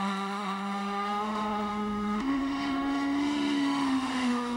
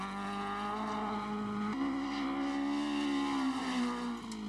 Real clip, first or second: second